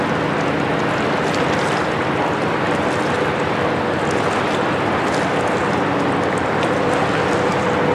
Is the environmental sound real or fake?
real